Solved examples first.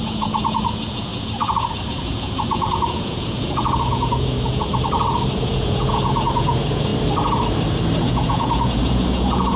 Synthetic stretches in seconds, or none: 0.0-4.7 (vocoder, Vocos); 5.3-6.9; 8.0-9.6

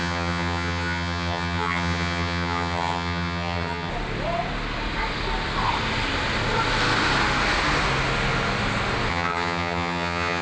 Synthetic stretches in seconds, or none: 0.0-3.9 (vocoder, HiFi-GAN); 9.1-10.4

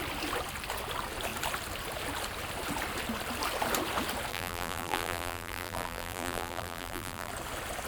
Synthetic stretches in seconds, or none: 4.3-7.3 (vocoder, BigVGAN v2)

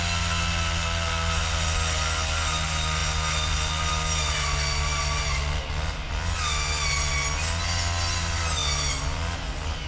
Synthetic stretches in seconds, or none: none

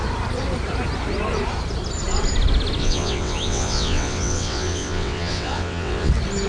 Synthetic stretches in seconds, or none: 2.8-6.1 (vocoder, WaveNeXt)

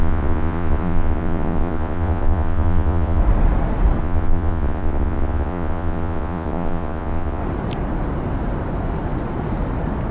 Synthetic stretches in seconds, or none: 0.0-3.2 (vocoder, Vocos); 4.0-7.4

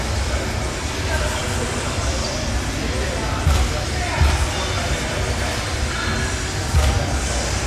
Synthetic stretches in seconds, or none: none